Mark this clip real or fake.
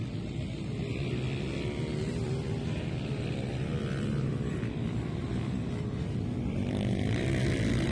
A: real